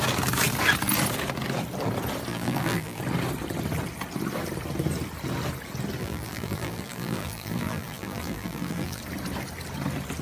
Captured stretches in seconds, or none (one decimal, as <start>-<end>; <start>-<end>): 0.0-2.3; 3.0-6.0; 9.0-10.2